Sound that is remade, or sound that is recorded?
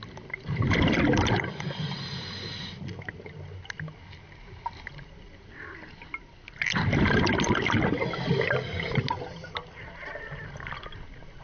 recorded